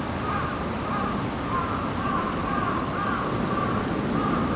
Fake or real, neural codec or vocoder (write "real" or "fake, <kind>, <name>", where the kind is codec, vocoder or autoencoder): real